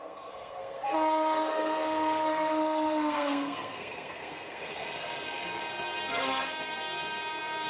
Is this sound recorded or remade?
remade